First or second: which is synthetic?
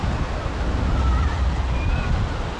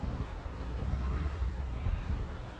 second